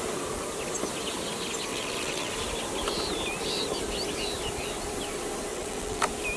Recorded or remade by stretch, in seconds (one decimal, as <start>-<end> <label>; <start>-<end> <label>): 0.0-1.7 recorded; 1.7-2.3 remade; 2.3-5.5 recorded; 5.5-6.0 remade; 6.0-6.4 recorded